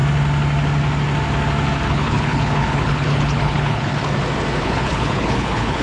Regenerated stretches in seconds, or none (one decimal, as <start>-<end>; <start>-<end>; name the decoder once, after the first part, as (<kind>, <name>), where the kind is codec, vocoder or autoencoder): 1.9-4.0 (codec, HILCodec); 4.6-5.8